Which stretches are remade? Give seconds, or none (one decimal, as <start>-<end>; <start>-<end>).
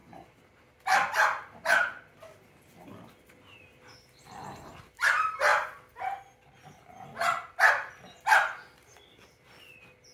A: none